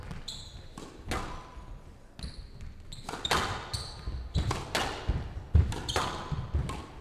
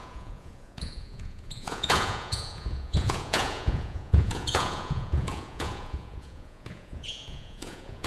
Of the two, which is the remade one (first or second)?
second